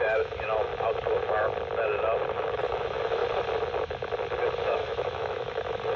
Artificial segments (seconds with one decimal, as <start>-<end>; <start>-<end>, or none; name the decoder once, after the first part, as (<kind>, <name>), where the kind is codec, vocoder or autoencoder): 0.0-0.7 (autoencoder, DAC-VAE); 2.3-3.2; 4.7-6.0